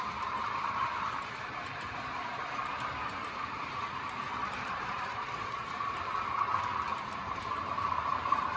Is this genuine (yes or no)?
no